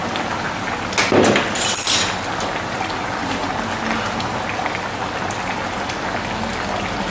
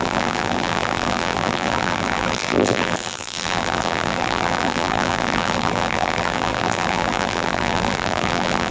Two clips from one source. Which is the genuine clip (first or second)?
first